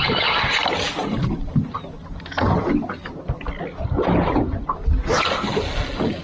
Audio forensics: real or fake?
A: real